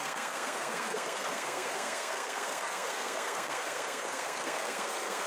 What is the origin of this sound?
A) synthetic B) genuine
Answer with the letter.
A